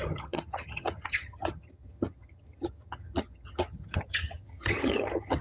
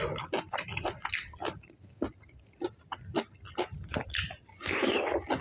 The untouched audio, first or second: second